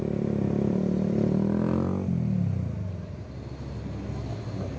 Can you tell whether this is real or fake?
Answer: real